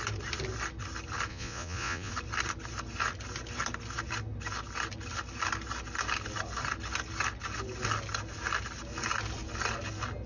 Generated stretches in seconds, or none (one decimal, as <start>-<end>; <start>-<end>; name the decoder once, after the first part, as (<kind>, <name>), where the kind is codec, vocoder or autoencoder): 1.3-2.1 (vocoder, Vocos)